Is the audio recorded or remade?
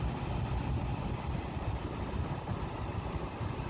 remade